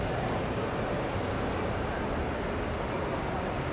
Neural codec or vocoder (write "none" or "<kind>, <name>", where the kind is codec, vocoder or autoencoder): none